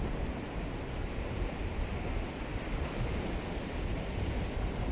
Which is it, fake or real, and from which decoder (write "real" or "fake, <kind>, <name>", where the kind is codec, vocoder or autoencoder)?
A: real